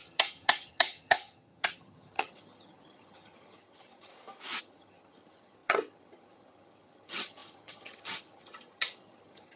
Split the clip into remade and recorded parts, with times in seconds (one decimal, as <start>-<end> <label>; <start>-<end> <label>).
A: 0.0-4.1 remade; 4.1-4.6 recorded; 4.6-9.6 remade